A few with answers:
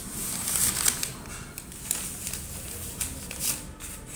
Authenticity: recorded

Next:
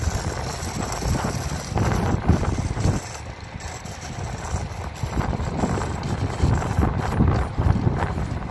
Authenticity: recorded